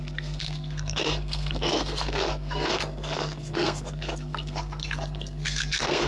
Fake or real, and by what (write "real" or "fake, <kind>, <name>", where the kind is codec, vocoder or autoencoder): fake, codec, SNAC